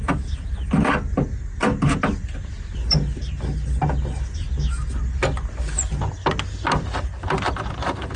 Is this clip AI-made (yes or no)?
no